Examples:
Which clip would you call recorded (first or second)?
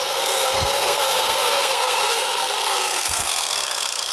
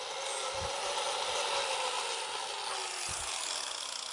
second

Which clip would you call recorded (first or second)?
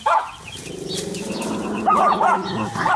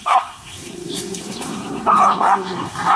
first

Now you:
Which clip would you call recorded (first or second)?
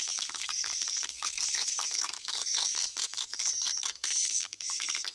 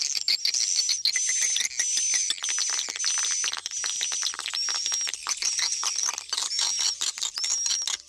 second